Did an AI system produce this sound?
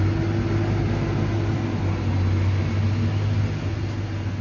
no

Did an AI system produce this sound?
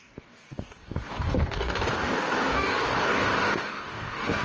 yes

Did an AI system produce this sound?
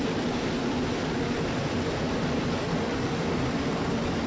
yes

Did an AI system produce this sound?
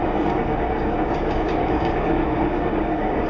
yes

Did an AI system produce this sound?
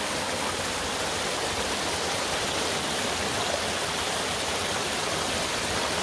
no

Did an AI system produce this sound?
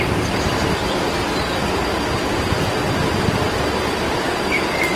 no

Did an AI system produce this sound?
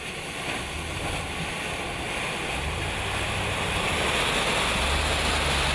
no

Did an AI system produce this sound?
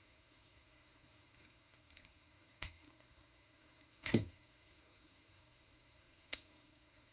yes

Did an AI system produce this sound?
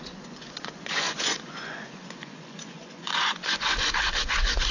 yes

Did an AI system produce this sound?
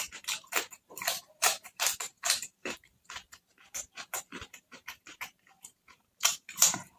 yes